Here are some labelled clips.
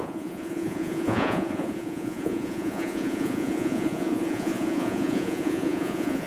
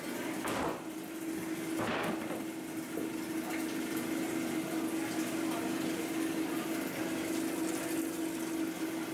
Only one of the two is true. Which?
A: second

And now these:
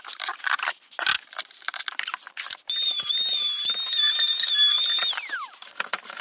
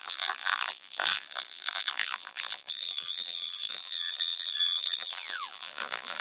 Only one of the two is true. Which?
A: first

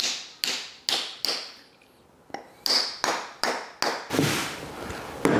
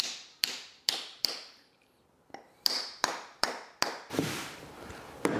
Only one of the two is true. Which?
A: first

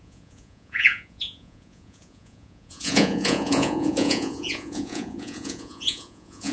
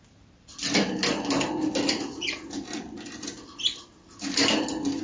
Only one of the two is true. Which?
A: second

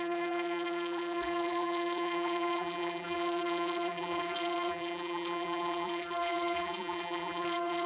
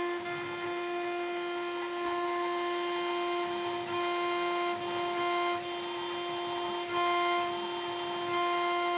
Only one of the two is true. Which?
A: second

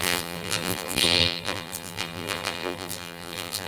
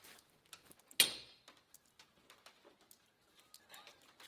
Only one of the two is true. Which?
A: second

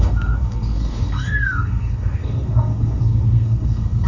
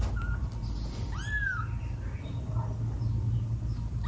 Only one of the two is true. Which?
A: second